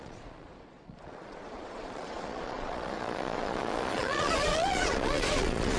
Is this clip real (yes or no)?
no